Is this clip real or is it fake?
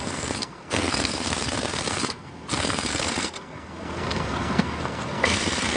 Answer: fake